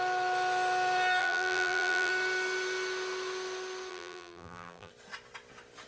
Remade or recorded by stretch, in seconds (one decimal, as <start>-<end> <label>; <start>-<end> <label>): 0.0-1.2 recorded; 1.2-2.1 remade; 2.1-3.9 recorded; 3.9-4.9 remade; 4.9-5.9 recorded